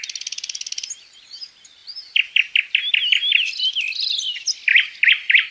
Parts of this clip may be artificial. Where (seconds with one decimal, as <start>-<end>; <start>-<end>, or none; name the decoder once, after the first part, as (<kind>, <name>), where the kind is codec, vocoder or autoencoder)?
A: none